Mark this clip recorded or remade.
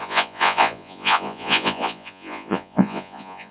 remade